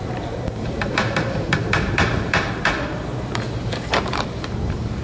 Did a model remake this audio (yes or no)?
yes